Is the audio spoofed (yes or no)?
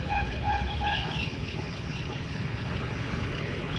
yes